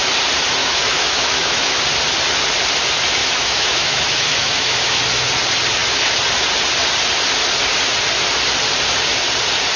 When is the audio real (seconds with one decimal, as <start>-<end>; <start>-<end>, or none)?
0.0-0.6; 1.8-3.2; 5.0-9.8